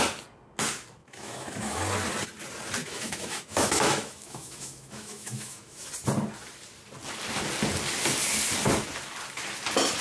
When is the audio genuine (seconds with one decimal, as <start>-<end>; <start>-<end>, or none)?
0.0-1.0; 1.8-2.8; 5.9-10.0

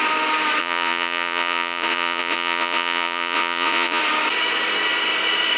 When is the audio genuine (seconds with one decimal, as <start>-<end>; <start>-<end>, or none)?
0.0-0.6; 4.0-5.6

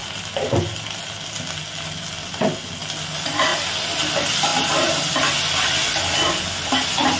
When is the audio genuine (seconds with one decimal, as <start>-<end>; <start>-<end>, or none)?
0.0-7.2

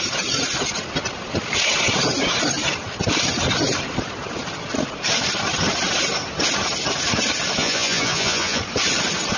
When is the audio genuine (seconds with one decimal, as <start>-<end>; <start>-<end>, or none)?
0.0-7.6; 8.6-9.4

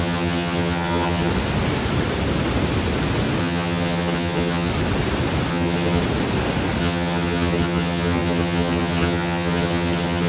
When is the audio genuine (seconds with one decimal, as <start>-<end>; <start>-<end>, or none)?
1.3-3.4; 4.7-5.5; 6.0-6.8

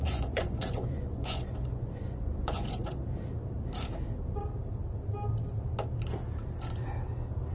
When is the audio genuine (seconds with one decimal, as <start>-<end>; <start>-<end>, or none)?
3.0-7.5